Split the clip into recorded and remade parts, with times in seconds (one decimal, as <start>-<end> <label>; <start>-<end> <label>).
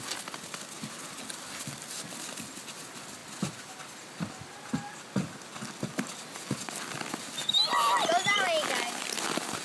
0.0-3.2 recorded; 3.2-4.7 remade; 4.7-9.6 recorded